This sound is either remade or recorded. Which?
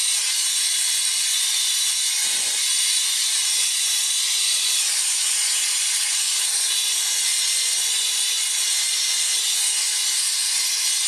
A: remade